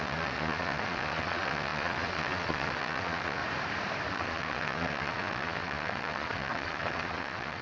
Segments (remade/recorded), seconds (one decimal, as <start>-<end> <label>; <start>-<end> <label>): 0.0-3.4 remade; 3.4-4.1 recorded; 4.1-7.6 remade